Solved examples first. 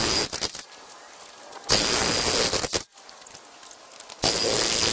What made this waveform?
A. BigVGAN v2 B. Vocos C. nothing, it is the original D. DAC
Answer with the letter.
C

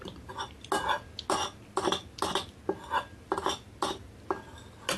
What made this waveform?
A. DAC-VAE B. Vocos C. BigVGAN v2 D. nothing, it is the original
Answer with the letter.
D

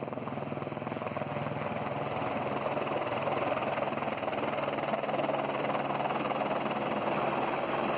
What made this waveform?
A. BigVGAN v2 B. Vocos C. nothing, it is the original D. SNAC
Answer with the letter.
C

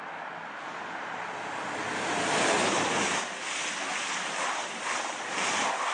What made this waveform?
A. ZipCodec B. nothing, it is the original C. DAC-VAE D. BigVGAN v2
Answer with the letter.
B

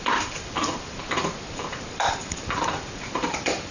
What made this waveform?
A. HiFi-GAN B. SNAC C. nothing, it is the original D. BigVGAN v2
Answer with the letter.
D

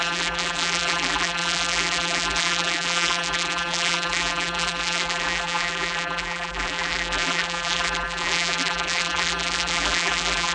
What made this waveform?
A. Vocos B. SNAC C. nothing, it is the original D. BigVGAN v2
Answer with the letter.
D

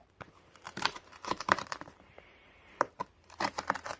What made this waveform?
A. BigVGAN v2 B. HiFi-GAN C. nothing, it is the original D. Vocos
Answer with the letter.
A